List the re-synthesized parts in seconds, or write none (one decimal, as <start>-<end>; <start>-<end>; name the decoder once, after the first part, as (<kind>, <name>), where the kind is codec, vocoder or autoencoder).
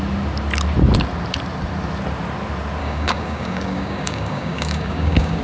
2.8-5.4 (codec, DAC)